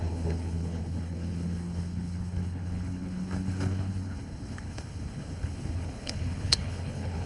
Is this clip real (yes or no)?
no